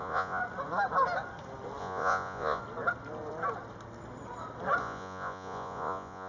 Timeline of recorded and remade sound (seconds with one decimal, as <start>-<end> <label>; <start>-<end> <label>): 0.0-0.4 remade; 0.4-1.8 recorded; 1.8-2.6 remade; 2.6-4.8 recorded; 4.8-6.3 remade